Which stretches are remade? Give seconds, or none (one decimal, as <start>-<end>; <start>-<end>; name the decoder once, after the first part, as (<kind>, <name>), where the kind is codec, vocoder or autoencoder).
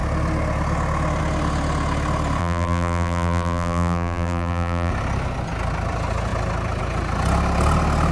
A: 2.4-4.9 (vocoder, BigVGAN v2)